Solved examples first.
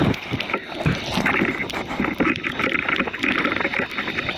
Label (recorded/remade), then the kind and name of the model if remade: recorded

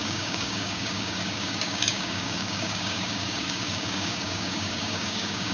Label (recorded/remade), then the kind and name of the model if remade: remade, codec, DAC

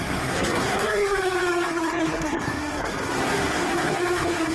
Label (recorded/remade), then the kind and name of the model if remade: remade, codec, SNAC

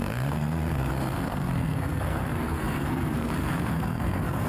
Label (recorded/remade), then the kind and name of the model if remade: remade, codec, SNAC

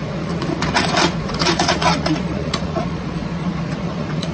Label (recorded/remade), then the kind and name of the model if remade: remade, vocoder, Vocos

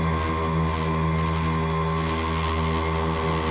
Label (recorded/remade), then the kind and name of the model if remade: recorded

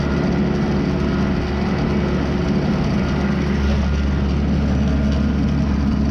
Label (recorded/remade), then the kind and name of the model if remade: recorded